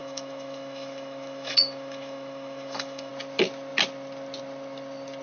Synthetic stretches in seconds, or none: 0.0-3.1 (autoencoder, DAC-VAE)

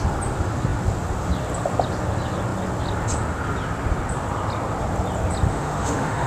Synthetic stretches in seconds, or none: 5.5-6.3 (autoencoder, DAC-VAE)

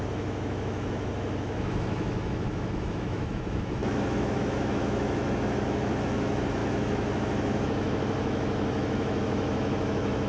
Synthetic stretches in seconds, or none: 0.0-10.3 (autoencoder, DAC-VAE)

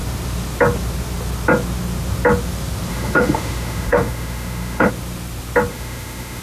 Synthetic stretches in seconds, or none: 2.9-4.9 (autoencoder, DAC-VAE); 5.7-6.4

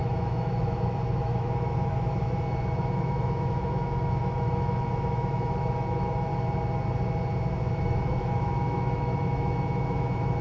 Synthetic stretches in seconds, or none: 0.0-6.3 (autoencoder, DAC-VAE); 7.8-10.4

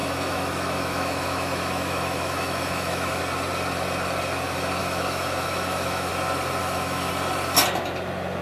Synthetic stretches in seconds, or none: 0.0-3.2 (autoencoder, DAC-VAE); 4.8-6.1; 6.6-7.1

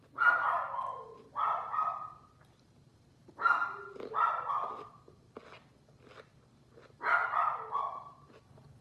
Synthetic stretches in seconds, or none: none

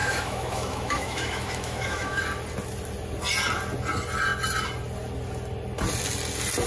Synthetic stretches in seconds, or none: 0.0-2.2 (autoencoder, DAC-VAE)